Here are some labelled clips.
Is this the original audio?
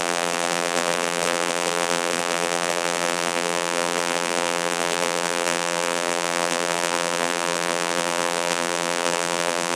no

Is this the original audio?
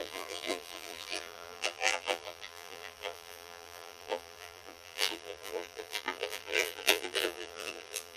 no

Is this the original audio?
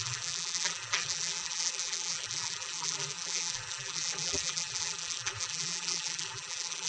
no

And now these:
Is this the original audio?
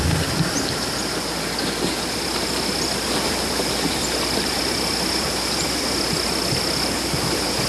yes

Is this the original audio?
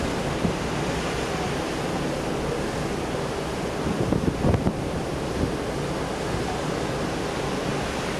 yes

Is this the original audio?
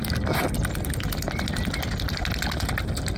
yes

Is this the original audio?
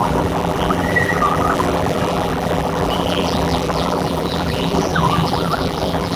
no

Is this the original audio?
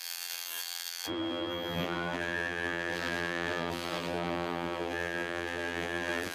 no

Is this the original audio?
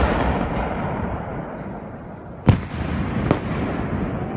yes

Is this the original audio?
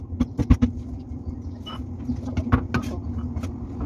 yes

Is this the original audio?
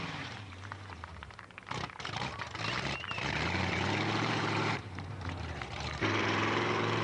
no